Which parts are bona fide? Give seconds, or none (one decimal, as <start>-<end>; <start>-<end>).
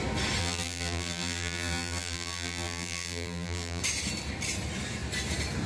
0.0-0.4; 3.8-5.7